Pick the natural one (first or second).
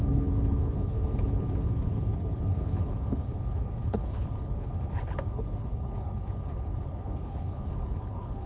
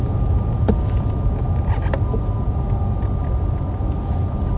second